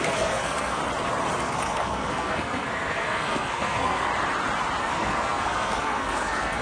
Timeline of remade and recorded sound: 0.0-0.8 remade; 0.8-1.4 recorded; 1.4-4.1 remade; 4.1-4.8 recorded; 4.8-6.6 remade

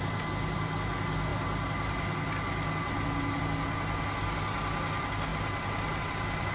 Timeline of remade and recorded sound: 0.0-6.5 recorded

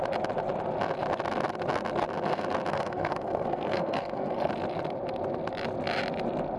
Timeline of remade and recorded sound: 0.0-2.7 recorded; 2.7-4.5 remade; 4.5-6.6 recorded